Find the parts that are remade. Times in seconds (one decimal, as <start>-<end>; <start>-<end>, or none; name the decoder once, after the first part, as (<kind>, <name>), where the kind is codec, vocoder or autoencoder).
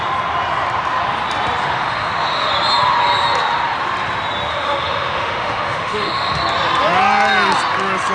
1.6-2.5 (autoencoder, DAC-VAE); 4.5-6.4